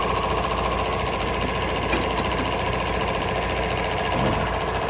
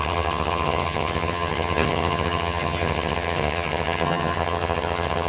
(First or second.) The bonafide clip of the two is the first